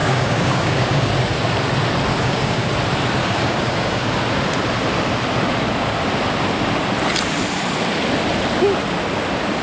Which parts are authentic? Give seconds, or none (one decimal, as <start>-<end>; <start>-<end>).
1.1-2.1; 2.7-3.2; 4.2-9.6